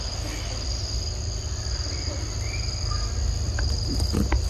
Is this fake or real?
real